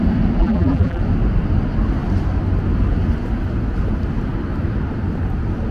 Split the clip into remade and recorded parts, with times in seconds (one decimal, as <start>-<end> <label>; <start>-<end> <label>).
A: 0.0-0.4 recorded; 0.4-1.0 remade; 1.0-5.7 recorded